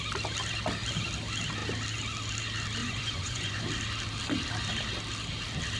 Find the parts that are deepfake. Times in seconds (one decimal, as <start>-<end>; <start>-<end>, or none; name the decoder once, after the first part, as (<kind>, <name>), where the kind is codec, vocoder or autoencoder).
2.8-3.6 (vocoder, Vocos)

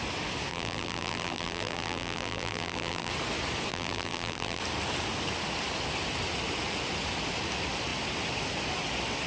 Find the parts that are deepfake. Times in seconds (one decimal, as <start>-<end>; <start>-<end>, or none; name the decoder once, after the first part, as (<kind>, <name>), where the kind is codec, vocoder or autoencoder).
0.5-3.1 (vocoder, BigVGAN v2); 3.7-4.6

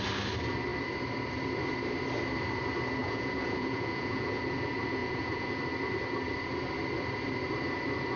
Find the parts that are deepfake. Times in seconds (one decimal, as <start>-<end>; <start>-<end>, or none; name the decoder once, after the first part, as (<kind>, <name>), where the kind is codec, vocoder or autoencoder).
3.0-4.4 (vocoder, Vocos); 5.0-5.6

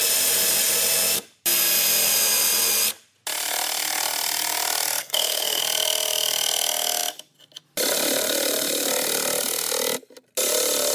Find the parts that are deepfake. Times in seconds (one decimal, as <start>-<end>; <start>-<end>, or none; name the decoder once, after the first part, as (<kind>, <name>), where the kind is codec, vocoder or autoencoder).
5.0-5.6 (codec, SNAC)